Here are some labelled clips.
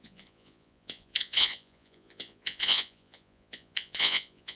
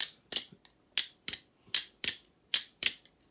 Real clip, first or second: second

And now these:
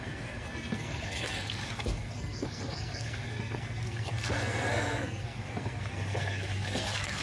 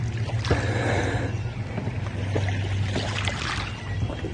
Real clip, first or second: second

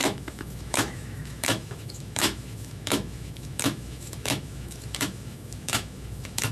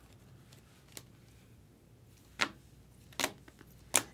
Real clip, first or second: second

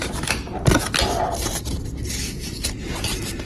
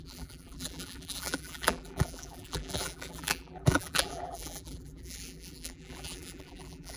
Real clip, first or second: first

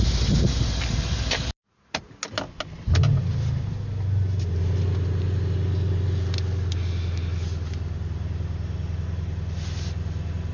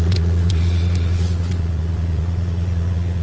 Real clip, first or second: first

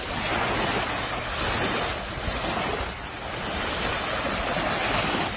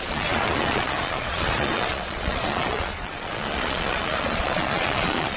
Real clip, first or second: first